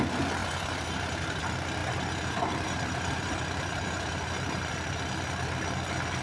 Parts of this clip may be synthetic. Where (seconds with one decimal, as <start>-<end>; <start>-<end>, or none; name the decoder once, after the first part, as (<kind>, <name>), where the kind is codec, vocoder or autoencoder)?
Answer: 0.4-1.4 (vocoder, BigVGAN v2); 1.8-5.1